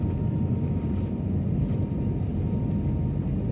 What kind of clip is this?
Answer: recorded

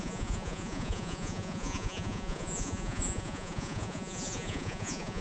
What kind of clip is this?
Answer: remade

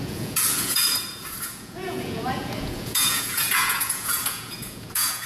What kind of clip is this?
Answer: remade